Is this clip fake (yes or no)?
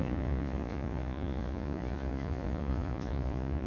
yes